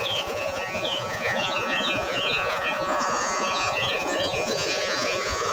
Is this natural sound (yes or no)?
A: no